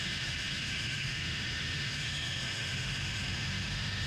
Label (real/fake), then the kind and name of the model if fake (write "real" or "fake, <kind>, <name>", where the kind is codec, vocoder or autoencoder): fake, autoencoder, DAC-VAE